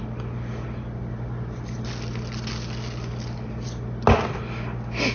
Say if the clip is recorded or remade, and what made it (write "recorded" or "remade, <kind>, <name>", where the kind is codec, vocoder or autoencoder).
recorded